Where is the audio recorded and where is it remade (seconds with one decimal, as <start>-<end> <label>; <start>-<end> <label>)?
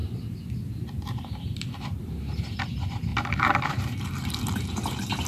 0.0-2.6 remade; 2.6-3.1 recorded; 3.1-5.3 remade